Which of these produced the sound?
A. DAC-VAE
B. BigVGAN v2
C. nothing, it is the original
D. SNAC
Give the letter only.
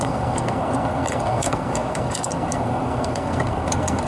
D